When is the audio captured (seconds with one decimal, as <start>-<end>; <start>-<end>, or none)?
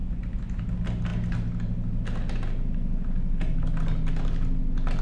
0.7-5.0